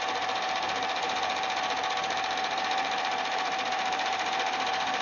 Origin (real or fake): fake